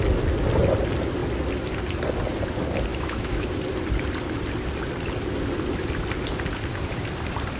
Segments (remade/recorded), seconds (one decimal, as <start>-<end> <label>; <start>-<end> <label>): 0.0-2.9 recorded; 2.9-3.6 remade; 3.6-7.6 recorded